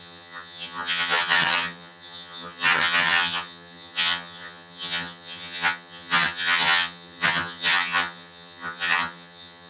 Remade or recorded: remade